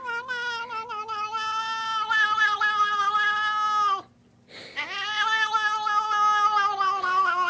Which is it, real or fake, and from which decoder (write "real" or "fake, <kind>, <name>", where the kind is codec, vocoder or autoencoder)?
real